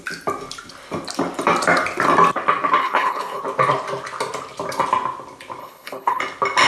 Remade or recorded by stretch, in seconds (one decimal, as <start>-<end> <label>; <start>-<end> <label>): 0.0-2.8 recorded; 2.8-3.4 remade; 3.4-5.6 recorded; 5.6-6.2 remade; 6.2-6.7 recorded